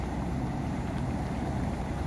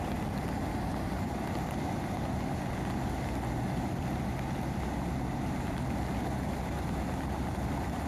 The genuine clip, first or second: second